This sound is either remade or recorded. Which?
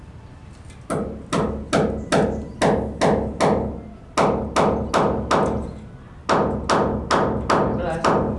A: recorded